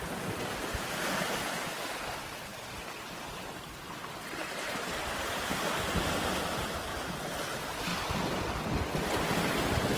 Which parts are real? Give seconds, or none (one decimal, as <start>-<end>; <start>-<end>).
2.5-3.1; 6.9-7.4; 7.9-9.5